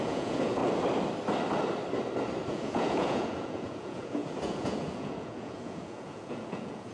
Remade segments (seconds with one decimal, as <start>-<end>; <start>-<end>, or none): 0.0-0.6; 2.5-6.9